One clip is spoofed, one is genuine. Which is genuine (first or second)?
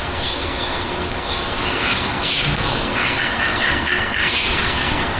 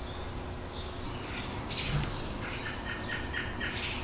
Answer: second